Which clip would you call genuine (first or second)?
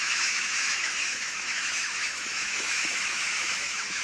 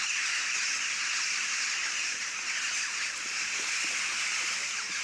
second